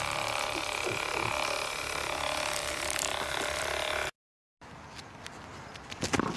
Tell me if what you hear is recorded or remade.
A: remade